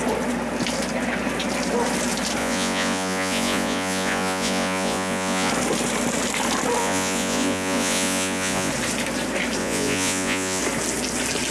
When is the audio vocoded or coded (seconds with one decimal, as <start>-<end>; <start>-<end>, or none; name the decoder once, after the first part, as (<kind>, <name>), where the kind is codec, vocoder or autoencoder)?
2.4-5.5 (vocoder, Vocos); 6.8-8.7; 9.6-10.6